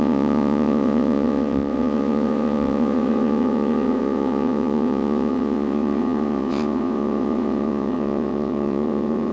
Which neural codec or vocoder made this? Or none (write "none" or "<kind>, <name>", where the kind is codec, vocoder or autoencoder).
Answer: vocoder, WaveNeXt